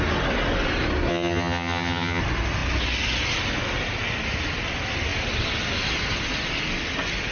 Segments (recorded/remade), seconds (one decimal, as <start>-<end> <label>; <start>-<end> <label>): 0.0-1.1 recorded; 1.1-2.2 remade; 2.2-7.3 recorded